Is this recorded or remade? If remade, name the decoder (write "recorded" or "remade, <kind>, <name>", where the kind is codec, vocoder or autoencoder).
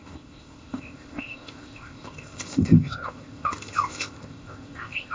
remade, codec, ZipCodec